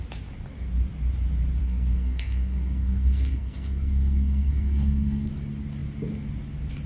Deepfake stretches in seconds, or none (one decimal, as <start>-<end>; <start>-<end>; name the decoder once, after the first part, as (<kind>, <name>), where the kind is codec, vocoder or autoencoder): 1.6-5.3 (codec, SNAC)